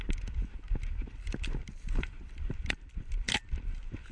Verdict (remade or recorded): recorded